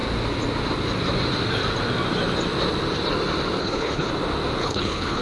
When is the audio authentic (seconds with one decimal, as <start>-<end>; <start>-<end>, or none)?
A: 0.0-3.6; 4.1-4.6

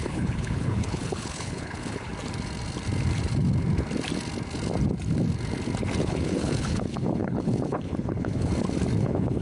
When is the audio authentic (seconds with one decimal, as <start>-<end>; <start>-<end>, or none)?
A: 2.1-6.0; 8.5-9.0

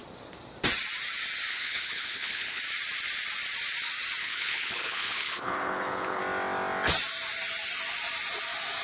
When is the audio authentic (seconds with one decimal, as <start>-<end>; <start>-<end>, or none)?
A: 0.0-1.5; 2.6-4.2; 6.2-8.8

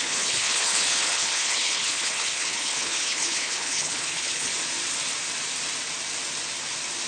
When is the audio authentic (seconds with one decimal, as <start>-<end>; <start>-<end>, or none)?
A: 4.5-7.1

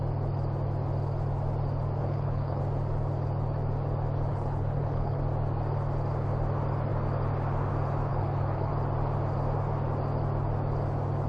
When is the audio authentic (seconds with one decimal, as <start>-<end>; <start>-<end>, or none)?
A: 0.0-2.0; 2.6-4.3; 5.2-8.1; 8.7-11.3

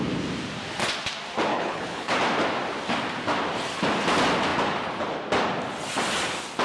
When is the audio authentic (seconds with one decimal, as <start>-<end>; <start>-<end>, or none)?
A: 0.0-1.5; 2.1-6.6